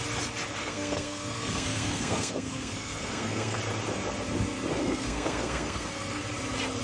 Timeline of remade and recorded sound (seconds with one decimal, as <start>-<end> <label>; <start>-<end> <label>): 0.0-0.6 recorded; 0.6-3.6 remade; 3.6-4.8 recorded; 4.8-6.2 remade; 6.2-6.8 recorded